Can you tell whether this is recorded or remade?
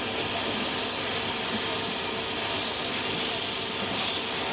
recorded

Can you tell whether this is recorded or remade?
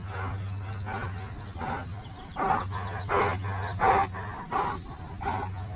recorded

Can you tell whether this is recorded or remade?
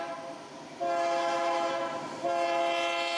recorded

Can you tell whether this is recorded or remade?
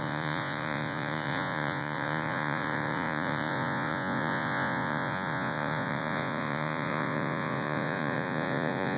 remade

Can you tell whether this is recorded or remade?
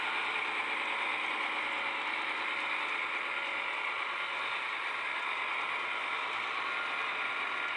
recorded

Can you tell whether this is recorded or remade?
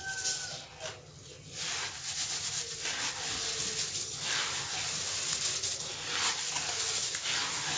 recorded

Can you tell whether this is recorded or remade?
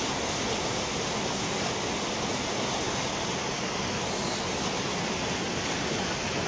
recorded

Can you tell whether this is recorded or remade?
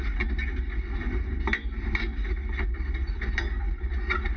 recorded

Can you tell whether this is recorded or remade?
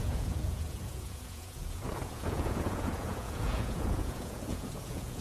remade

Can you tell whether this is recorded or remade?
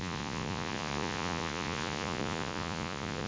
remade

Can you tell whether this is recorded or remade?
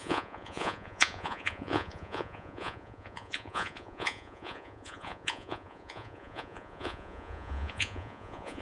remade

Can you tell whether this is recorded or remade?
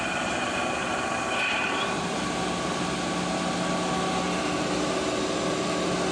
recorded